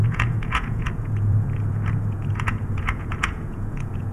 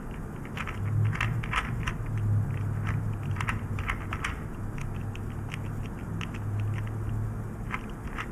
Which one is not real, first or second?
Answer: first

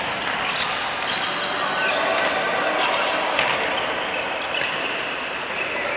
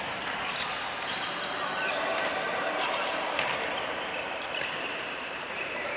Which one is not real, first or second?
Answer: second